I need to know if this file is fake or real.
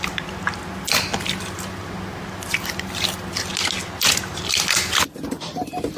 real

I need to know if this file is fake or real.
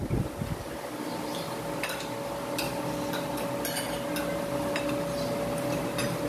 real